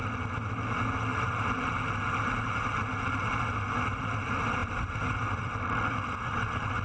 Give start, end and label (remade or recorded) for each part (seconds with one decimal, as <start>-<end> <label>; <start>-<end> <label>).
0.0-1.1 recorded; 1.1-1.7 remade; 1.7-4.6 recorded; 4.6-6.8 remade